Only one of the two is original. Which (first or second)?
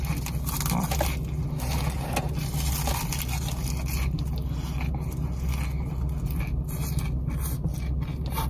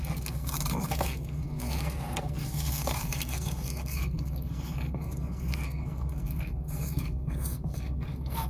first